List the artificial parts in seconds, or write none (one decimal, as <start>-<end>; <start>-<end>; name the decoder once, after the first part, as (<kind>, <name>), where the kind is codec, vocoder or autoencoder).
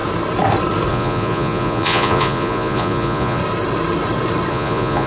0.9-3.4 (vocoder, Vocos); 4.5-5.1